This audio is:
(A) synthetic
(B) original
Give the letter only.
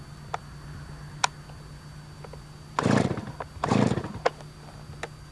B